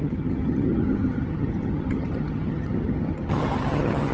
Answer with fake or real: fake